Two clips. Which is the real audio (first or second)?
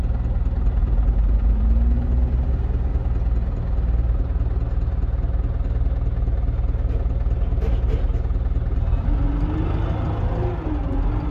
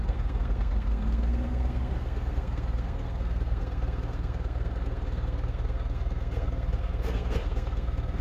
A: first